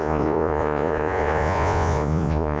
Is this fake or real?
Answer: fake